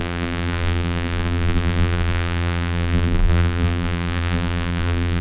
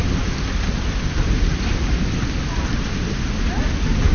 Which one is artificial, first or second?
first